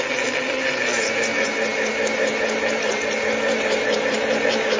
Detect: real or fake real